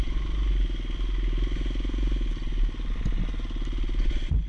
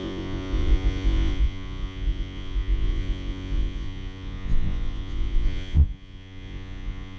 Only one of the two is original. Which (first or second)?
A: first